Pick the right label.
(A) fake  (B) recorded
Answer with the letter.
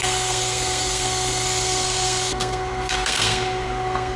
A